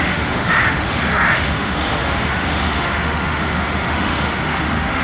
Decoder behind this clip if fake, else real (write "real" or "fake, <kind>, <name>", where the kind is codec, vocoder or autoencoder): fake, autoencoder, DAC-VAE